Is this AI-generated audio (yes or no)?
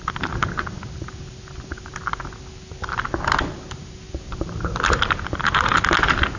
no